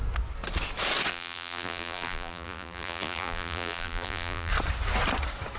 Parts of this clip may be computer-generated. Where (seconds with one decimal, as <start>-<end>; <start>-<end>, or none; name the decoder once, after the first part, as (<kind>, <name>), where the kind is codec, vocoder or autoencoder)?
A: 1.1-4.5 (vocoder, BigVGAN v2)